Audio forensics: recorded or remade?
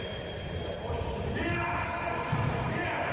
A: remade